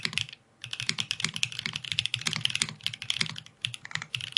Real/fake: real